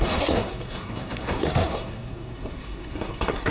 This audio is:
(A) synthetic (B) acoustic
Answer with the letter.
A